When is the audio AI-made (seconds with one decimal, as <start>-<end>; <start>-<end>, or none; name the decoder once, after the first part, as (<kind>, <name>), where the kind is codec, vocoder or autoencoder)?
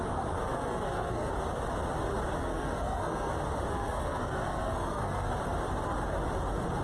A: 0.4-1.3 (codec, SNAC); 2.4-3.3; 3.7-5.3